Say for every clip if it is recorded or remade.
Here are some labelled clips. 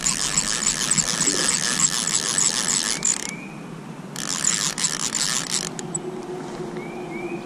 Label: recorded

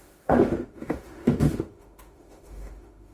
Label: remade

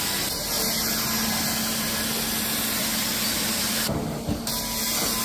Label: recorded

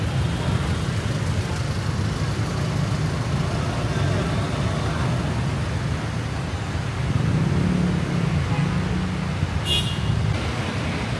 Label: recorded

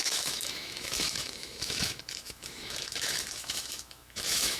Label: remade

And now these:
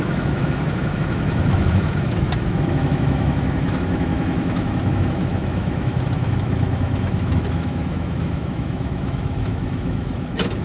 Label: remade